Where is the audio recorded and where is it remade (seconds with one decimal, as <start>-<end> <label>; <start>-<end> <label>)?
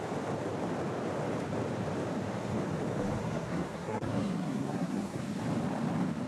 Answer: 0.0-3.2 recorded; 3.2-5.2 remade; 5.2-6.3 recorded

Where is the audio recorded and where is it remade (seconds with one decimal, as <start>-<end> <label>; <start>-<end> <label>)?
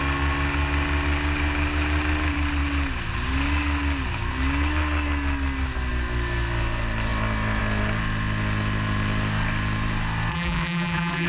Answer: 0.0-10.3 recorded; 10.3-11.3 remade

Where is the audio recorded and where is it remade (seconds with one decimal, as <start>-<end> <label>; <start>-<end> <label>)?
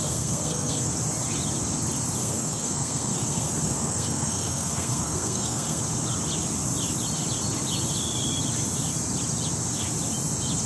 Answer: 0.0-0.9 remade; 0.9-2.2 recorded; 2.2-5.8 remade; 5.8-10.7 recorded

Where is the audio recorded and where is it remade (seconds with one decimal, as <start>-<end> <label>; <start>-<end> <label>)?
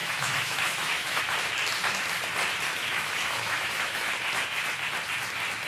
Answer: 0.0-1.2 remade; 1.2-2.8 recorded; 2.8-4.0 remade; 4.0-5.7 recorded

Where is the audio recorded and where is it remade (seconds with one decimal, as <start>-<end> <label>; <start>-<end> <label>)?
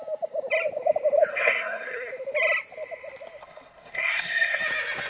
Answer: 0.0-1.3 recorded; 1.3-2.1 remade; 2.1-3.4 recorded; 3.4-4.6 remade; 4.6-5.1 recorded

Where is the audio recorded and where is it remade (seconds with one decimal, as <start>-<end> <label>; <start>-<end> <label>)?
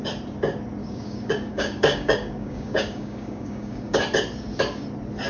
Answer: 0.0-0.8 recorded; 0.8-4.0 remade; 4.0-5.3 recorded